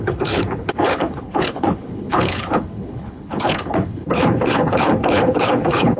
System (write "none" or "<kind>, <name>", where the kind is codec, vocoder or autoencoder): codec, HILCodec